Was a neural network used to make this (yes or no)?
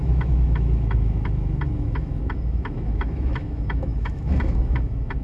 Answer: yes